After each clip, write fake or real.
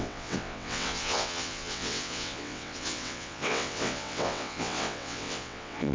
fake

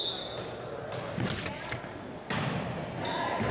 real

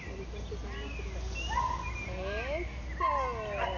real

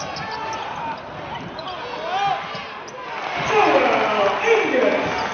real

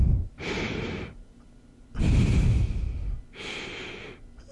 real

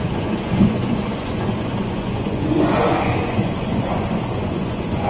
fake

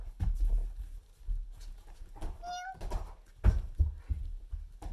real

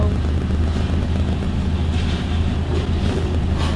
real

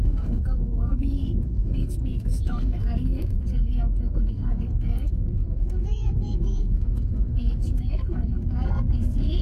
fake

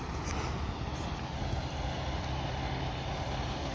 fake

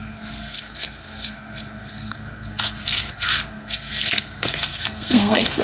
fake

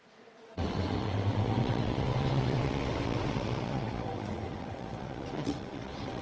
fake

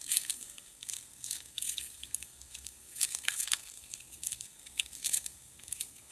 fake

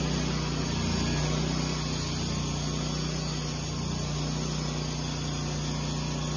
real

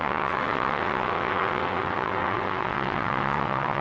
fake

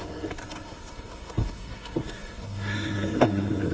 fake